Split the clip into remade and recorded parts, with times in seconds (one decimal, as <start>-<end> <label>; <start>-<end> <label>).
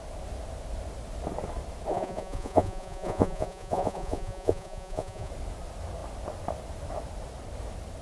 0.0-1.9 recorded; 1.9-5.3 remade; 5.3-8.0 recorded